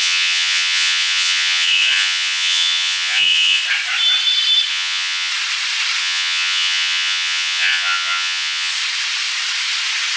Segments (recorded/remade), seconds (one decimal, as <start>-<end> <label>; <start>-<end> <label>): 0.0-3.6 remade; 3.6-4.7 recorded; 4.7-5.3 remade; 5.3-6.0 recorded; 6.0-8.7 remade; 8.7-10.2 recorded